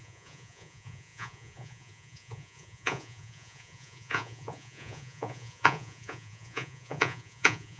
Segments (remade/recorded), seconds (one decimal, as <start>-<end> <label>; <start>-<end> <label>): 0.0-7.8 remade